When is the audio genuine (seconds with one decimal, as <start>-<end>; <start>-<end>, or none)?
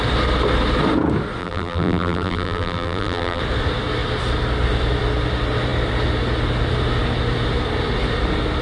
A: 0.0-1.4; 3.4-8.6